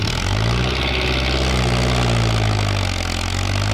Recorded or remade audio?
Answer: recorded